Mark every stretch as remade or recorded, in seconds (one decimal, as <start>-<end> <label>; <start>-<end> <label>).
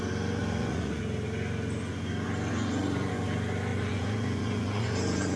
0.0-0.4 recorded; 0.4-1.0 remade; 1.0-2.5 recorded; 2.5-3.1 remade; 3.1-3.7 recorded; 3.7-5.4 remade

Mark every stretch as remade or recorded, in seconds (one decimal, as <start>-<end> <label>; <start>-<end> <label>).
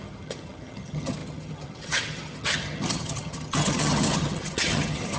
0.0-5.2 remade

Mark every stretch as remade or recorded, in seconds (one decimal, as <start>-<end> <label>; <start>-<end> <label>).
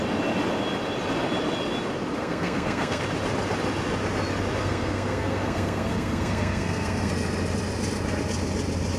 0.0-2.2 recorded; 2.2-3.0 remade; 3.0-4.6 recorded; 4.6-7.1 remade; 7.1-9.0 recorded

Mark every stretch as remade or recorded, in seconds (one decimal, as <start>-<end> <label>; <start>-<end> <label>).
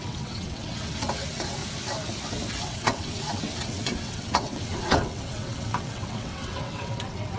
0.0-1.6 remade; 1.6-2.5 recorded; 2.5-7.4 remade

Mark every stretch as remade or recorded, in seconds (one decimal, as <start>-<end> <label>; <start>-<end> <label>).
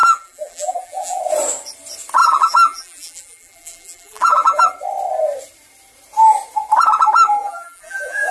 0.0-1.2 remade; 1.2-2.2 recorded; 2.2-4.6 remade; 4.6-7.4 recorded; 7.4-8.3 remade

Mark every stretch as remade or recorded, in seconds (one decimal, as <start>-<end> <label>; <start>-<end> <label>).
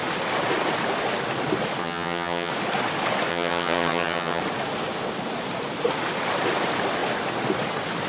0.0-1.8 recorded; 1.8-2.5 remade; 2.5-3.3 recorded; 3.3-4.4 remade; 4.4-8.1 recorded